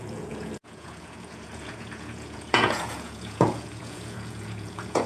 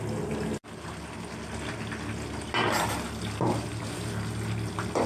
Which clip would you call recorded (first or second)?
second